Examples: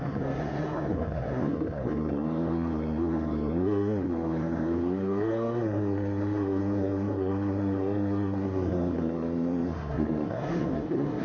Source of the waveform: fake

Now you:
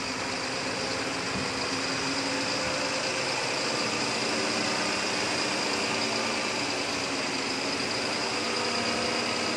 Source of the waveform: real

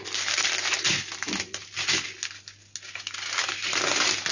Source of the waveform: real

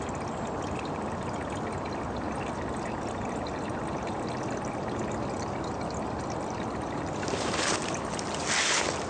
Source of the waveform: real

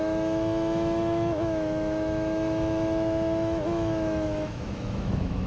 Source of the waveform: fake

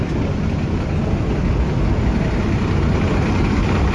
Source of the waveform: real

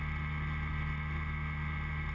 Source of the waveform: real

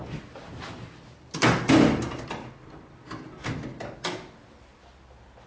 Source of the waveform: real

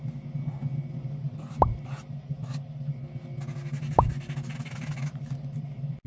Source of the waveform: real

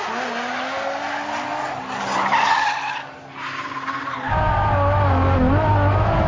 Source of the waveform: real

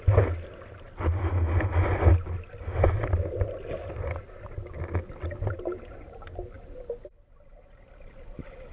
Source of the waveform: real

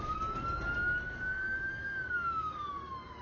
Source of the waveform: fake